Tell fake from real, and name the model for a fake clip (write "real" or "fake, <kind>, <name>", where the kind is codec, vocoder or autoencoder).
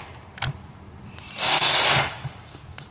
fake, vocoder, BigVGAN v2